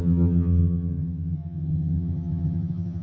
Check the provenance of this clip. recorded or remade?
remade